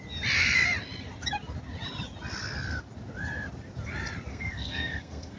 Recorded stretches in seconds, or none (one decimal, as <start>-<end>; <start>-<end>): 0.0-4.3